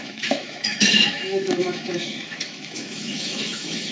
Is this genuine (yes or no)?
no